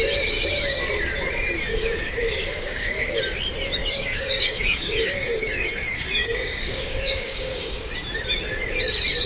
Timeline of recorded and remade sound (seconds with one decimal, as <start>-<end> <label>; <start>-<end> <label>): 0.0-1.7 recorded; 1.7-3.2 remade; 3.2-3.8 recorded; 3.8-7.9 remade; 7.9-9.3 recorded